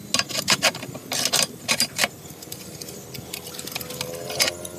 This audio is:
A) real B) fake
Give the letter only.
A